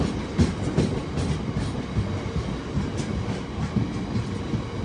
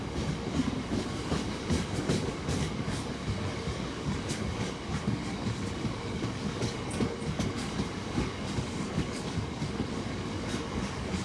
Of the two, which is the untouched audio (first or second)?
first